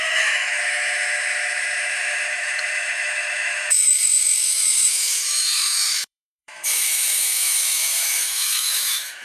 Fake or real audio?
fake